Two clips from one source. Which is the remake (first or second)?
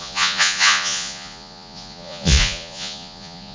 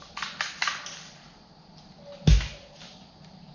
first